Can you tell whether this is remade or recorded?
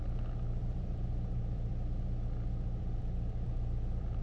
remade